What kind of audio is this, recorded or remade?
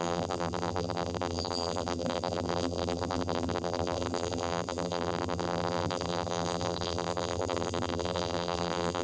remade